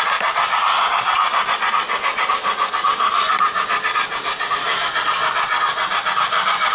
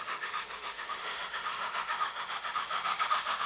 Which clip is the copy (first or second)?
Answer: second